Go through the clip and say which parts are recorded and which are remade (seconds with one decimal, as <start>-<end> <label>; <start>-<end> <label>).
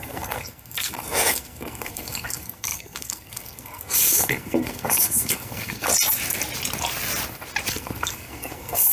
0.0-5.9 remade; 5.9-7.7 recorded; 7.7-8.9 remade